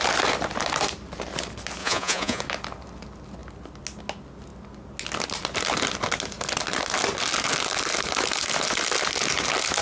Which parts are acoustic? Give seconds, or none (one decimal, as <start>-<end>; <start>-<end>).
0.0-1.8; 2.4-9.8